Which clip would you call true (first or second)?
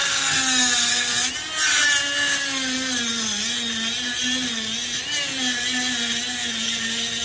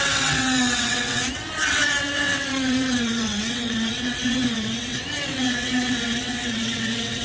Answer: first